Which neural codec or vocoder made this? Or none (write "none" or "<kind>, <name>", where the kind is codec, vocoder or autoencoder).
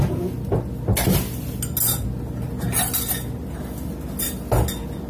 none